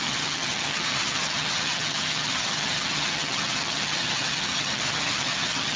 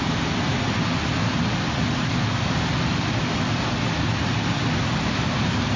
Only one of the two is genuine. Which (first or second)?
second